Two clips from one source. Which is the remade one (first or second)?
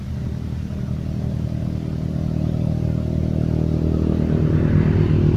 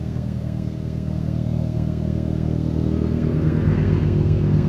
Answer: second